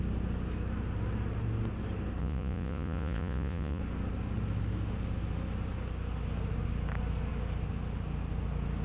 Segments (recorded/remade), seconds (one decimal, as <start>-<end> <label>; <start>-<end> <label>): 0.0-2.2 recorded; 2.2-3.8 remade; 3.8-8.8 recorded